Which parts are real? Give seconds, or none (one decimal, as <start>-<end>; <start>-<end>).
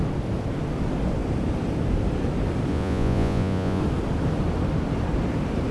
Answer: 0.0-2.7; 3.8-5.7